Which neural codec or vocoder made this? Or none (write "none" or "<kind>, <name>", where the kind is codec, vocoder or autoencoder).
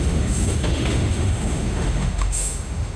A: autoencoder, DAC-VAE